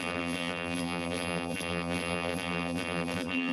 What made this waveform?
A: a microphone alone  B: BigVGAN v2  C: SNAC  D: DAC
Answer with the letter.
B